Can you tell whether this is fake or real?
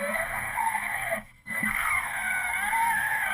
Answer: fake